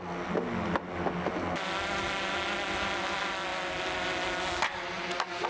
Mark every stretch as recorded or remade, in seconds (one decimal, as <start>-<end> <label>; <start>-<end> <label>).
0.0-5.5 recorded

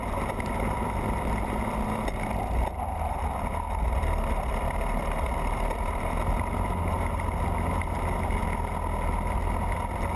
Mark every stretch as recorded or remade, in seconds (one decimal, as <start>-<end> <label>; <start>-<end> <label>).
0.0-10.2 recorded

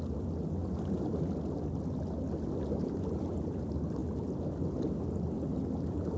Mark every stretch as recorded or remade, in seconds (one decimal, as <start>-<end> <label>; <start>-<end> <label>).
0.0-6.2 recorded

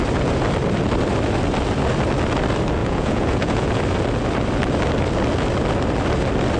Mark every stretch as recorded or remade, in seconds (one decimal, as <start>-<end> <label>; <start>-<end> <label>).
0.0-2.8 recorded; 2.8-3.8 remade; 3.8-6.6 recorded

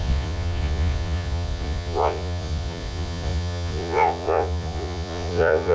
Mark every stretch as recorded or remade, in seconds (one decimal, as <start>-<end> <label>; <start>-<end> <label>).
0.0-5.7 remade

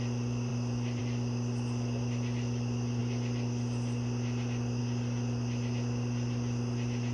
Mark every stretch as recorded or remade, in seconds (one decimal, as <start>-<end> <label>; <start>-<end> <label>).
0.0-7.1 recorded